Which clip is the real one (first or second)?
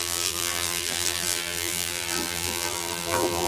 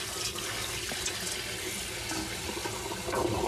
second